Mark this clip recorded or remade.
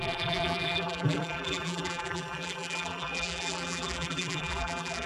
remade